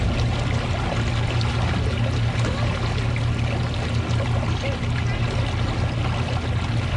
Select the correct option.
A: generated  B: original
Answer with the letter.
B